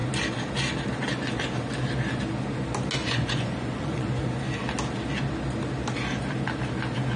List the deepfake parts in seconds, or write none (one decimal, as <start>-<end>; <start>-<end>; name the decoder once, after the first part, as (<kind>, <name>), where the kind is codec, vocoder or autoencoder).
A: 3.0-4.2 (vocoder, Vocos)